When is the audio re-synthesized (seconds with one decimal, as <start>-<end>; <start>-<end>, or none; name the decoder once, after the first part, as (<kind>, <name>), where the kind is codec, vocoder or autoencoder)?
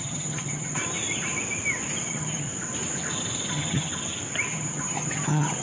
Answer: 0.0-0.8 (vocoder, HiFi-GAN); 2.1-2.5; 3.5-3.9; 4.5-5.6